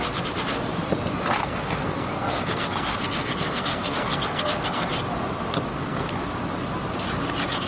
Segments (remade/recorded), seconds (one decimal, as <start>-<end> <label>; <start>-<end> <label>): 0.0-1.4 recorded; 1.4-4.9 remade; 4.9-5.7 recorded; 5.7-6.2 remade; 6.2-7.7 recorded